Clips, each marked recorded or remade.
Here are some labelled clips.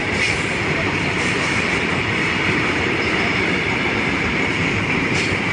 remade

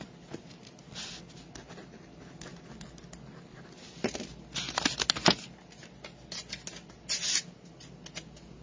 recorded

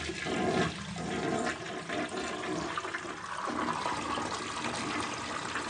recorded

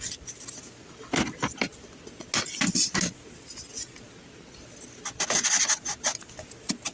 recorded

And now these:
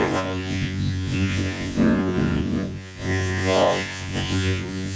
remade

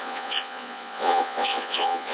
remade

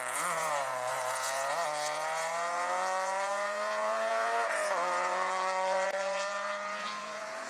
remade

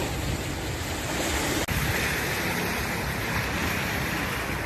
recorded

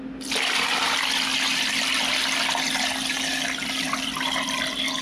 recorded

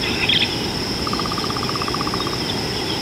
recorded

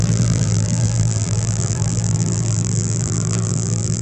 remade